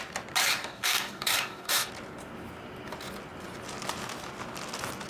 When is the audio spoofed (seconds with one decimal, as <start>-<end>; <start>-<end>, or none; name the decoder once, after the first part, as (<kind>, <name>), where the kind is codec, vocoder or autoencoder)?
0.5-1.9 (codec, DAC)